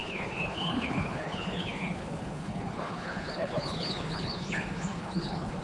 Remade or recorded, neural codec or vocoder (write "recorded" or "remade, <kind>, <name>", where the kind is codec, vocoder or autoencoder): remade, codec, HILCodec